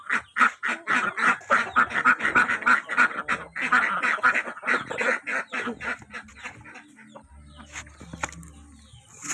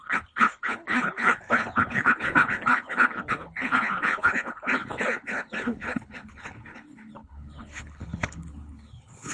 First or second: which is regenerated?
second